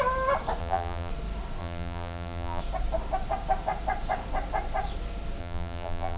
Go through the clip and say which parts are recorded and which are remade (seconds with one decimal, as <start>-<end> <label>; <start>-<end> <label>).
0.0-0.6 recorded; 0.6-1.1 remade; 1.1-1.6 recorded; 1.6-2.6 remade; 2.6-5.4 recorded; 5.4-6.2 remade